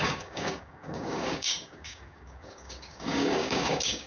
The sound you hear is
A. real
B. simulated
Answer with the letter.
B